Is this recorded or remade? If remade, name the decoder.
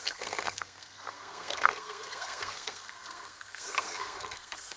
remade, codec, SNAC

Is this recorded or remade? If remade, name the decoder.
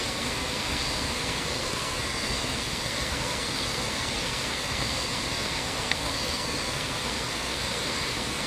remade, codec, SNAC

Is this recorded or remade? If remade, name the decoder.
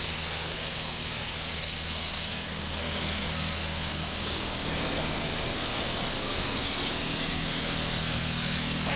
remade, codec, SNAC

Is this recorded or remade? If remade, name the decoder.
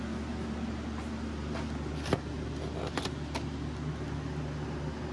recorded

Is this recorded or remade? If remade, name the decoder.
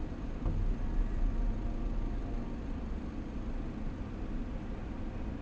recorded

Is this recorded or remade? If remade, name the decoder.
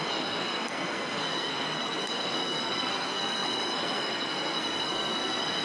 remade, codec, SNAC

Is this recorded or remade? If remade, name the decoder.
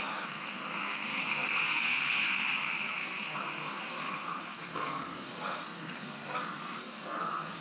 remade, codec, SNAC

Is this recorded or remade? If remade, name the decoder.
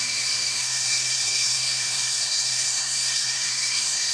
remade, codec, SNAC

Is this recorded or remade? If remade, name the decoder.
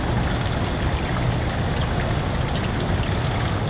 recorded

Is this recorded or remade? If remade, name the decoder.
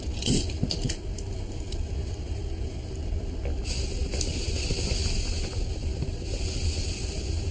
recorded